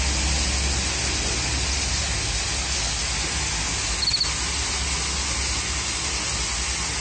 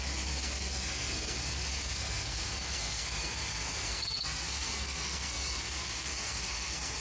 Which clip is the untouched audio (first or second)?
first